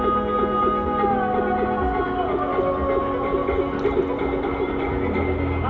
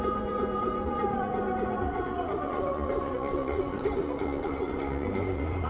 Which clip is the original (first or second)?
first